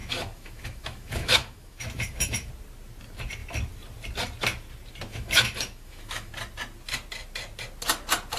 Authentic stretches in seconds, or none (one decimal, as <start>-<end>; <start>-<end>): 2.5-5.1; 6.3-8.4